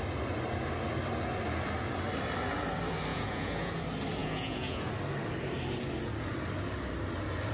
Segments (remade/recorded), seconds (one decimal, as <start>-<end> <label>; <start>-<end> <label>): 0.0-3.1 recorded; 3.1-3.7 remade; 3.7-4.2 recorded; 4.2-4.9 remade; 4.9-7.5 recorded

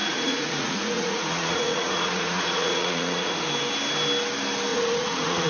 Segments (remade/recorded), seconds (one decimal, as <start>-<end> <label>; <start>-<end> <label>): 0.0-3.3 remade; 3.3-4.7 recorded; 4.7-5.5 remade

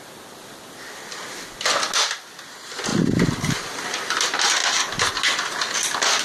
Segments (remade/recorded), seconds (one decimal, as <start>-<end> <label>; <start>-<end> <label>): 0.0-6.2 recorded